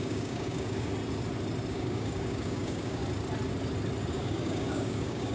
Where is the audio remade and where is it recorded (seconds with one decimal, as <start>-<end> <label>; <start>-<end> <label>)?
0.0-0.9 remade; 0.9-1.7 recorded; 1.7-3.0 remade; 3.0-4.1 recorded; 4.1-5.3 remade